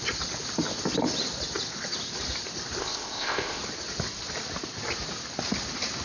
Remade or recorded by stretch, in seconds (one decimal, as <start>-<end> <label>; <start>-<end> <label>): 0.0-2.8 recorded; 2.8-3.6 remade; 3.6-6.0 recorded